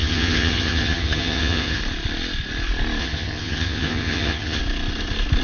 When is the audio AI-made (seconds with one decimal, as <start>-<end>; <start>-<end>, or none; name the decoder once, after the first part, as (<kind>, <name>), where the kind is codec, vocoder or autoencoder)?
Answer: 0.0-1.8 (vocoder, HiFi-GAN); 3.0-4.6